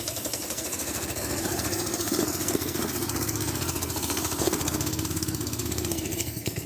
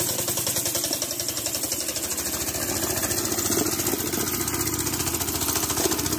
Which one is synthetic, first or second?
first